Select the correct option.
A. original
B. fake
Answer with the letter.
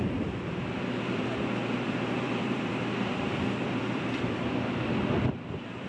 B